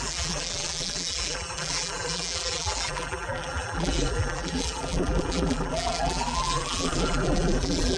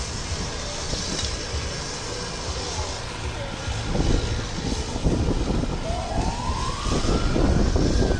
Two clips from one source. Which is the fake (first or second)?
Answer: first